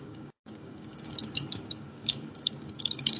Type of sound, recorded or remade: remade